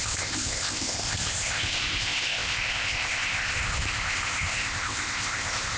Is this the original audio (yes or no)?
no